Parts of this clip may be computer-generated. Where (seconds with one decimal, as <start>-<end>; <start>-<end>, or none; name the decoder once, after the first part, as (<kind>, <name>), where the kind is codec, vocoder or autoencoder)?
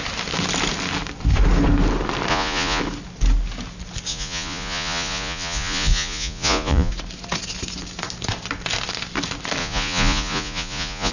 2.3-2.8 (vocoder, Vocos); 4.1-6.9; 9.6-11.1